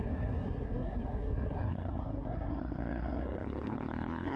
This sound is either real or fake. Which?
fake